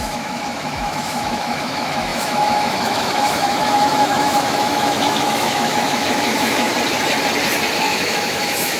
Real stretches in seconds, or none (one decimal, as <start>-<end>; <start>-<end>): 6.7-7.8